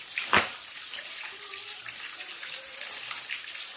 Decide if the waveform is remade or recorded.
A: remade